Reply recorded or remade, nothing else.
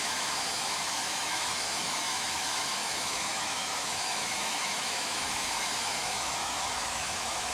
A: remade